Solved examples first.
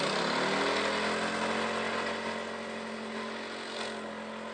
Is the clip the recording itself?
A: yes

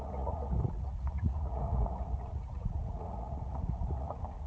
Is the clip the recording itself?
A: no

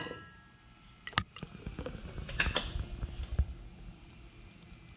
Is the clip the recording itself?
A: yes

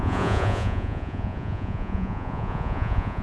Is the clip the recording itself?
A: no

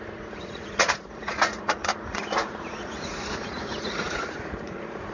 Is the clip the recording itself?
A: no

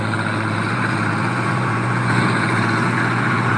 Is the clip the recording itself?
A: no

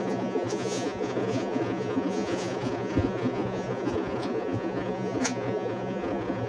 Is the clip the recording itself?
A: no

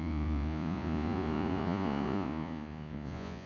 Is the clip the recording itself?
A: no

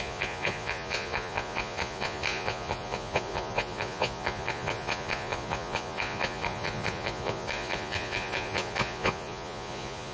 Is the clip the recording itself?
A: no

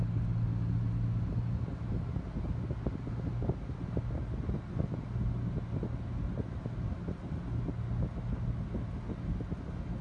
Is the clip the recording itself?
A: yes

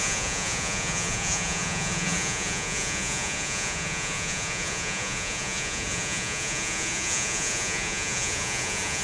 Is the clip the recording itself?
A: no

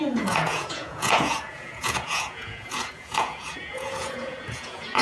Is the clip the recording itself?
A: no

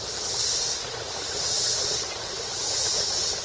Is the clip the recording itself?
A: yes